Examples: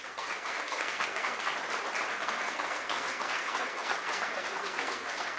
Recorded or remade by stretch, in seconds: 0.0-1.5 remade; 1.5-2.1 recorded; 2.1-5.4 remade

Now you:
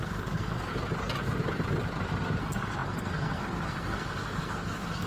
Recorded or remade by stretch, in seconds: 0.0-0.7 remade; 0.7-2.4 recorded; 2.4-5.1 remade

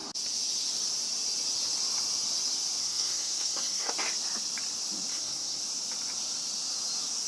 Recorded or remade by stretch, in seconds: 0.0-2.8 recorded; 2.8-3.9 remade; 3.9-5.1 recorded; 5.1-5.6 remade; 5.6-7.3 recorded